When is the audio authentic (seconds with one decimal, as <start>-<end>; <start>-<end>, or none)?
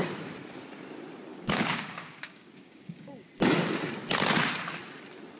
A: 0.0-1.3; 3.3-5.4